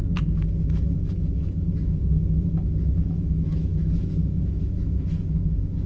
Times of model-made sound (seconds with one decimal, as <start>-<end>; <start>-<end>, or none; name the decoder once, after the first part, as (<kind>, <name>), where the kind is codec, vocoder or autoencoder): 0.0-5.9 (autoencoder, DAC-VAE)